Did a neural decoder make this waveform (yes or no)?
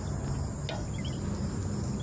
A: no